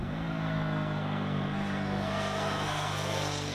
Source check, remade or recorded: remade